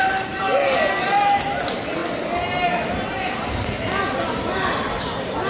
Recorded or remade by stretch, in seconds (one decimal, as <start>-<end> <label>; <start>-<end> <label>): 0.0-5.5 recorded